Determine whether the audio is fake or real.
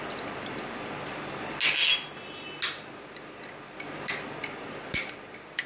real